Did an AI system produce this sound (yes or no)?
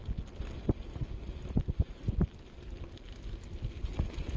no